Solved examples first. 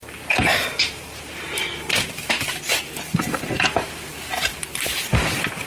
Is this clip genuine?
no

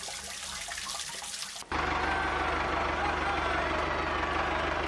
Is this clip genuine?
yes